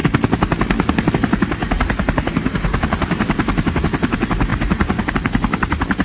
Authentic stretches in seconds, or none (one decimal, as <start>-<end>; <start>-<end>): 0.0-1.6; 3.8-4.5; 5.1-6.0

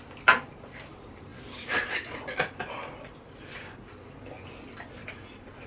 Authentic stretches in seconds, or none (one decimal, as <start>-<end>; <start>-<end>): 0.0-1.3; 4.0-5.0

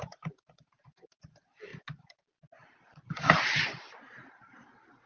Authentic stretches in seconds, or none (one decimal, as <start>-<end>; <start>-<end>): 1.7-5.1

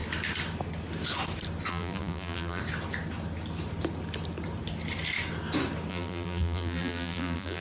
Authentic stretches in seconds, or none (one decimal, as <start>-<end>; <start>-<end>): 0.0-1.7; 2.6-5.9